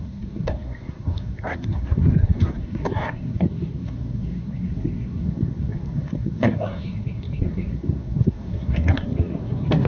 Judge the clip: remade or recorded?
remade